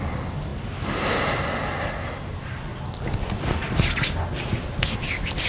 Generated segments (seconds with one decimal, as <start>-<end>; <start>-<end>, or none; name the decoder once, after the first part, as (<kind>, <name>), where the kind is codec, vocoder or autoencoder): none